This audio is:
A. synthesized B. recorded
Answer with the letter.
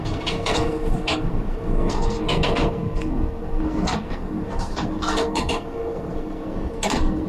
A